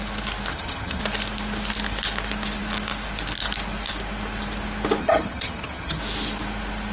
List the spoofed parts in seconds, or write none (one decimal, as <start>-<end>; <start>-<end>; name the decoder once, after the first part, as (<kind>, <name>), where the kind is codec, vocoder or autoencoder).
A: 0.5-1.0 (vocoder, HiFi-GAN); 5.0-6.0